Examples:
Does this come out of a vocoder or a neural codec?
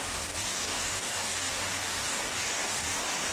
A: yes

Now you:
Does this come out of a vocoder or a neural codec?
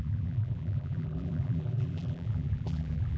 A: yes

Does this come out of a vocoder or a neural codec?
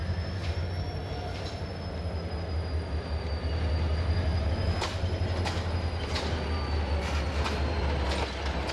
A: no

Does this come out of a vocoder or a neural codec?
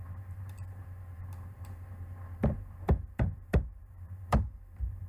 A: yes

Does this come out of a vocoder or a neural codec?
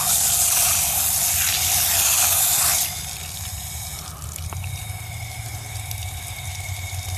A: no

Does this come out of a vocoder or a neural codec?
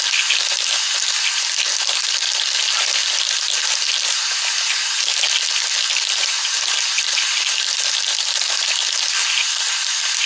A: no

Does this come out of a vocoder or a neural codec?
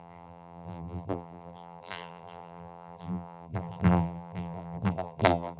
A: yes